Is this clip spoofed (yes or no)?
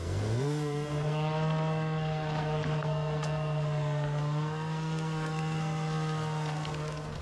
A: yes